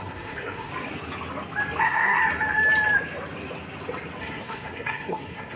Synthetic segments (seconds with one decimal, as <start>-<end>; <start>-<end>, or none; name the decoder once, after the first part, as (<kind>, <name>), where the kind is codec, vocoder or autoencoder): 0.0-0.7 (codec, SNAC); 1.8-2.2; 4.2-5.6